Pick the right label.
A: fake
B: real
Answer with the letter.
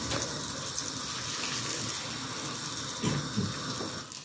B